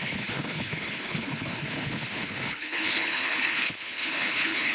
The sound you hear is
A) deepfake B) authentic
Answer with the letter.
A